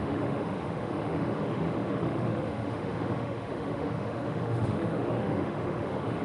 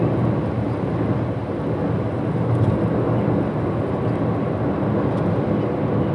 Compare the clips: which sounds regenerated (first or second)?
first